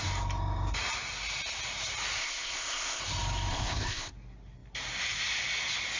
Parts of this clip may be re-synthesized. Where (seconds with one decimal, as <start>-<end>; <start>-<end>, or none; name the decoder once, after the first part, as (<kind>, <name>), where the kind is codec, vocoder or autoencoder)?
2.2-3.0 (codec, ZipCodec); 3.5-4.1